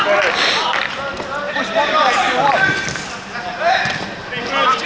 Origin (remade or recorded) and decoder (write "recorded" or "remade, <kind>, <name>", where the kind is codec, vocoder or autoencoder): recorded